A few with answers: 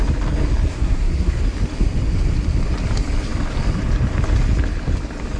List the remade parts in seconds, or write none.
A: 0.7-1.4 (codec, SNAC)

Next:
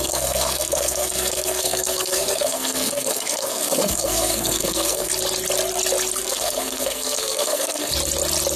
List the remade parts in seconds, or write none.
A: 0.0-5.1 (codec, SNAC); 6.2-7.9